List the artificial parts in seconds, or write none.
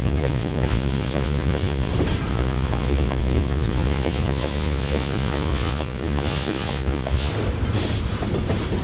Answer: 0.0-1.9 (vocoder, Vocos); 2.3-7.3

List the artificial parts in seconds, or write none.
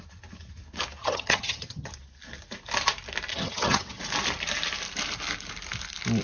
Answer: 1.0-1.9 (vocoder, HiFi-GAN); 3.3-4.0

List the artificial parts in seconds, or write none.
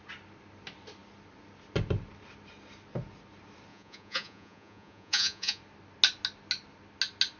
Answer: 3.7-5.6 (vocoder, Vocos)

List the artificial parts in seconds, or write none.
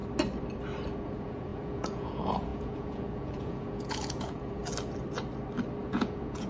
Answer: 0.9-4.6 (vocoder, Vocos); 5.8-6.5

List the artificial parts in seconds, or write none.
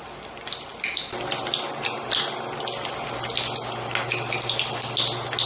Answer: none